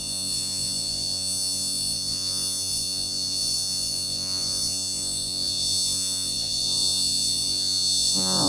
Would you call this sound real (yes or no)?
no